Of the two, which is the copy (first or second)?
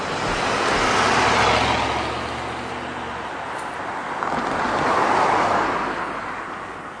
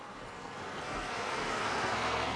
second